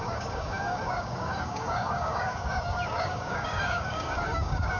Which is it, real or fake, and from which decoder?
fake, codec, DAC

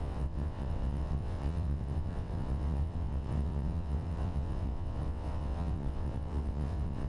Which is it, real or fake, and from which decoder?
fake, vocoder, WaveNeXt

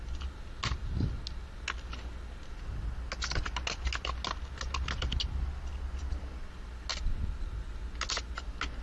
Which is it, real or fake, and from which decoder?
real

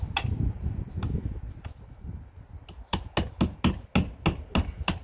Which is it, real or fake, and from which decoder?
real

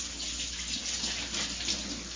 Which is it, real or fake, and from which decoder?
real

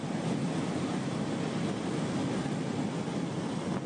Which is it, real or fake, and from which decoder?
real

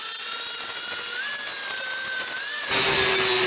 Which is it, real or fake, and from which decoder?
real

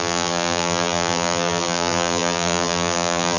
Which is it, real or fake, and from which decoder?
fake, vocoder, BigVGAN v2